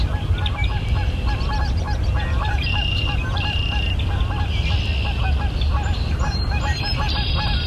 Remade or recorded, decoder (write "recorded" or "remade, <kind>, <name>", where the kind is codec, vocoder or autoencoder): recorded